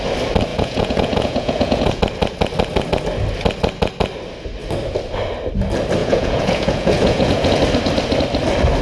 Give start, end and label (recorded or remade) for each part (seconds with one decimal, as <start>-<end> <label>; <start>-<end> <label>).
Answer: 0.0-0.5 recorded; 0.5-2.0 remade; 2.0-6.0 recorded; 6.0-7.6 remade; 7.6-8.8 recorded